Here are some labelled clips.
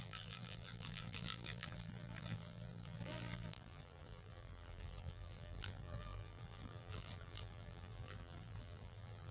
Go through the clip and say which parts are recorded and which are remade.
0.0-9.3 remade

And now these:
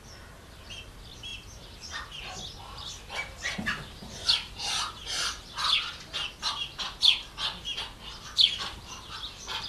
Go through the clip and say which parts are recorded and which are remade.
0.0-1.3 remade; 1.3-6.3 recorded; 6.3-9.7 remade

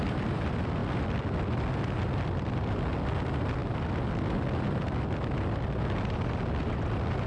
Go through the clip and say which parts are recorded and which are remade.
0.0-7.3 recorded

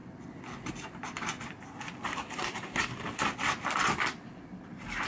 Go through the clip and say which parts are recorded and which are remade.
0.0-5.1 recorded

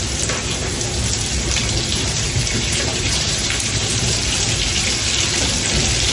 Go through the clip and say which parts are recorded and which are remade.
0.0-1.9 recorded; 1.9-4.2 remade; 4.2-6.1 recorded

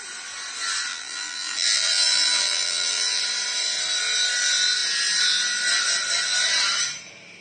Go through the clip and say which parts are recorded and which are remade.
0.0-0.9 recorded; 0.9-3.2 remade; 3.2-7.4 recorded